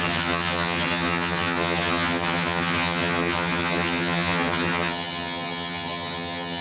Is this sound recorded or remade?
remade